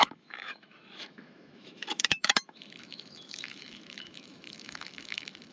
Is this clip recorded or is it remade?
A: remade